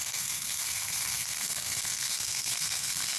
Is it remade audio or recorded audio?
remade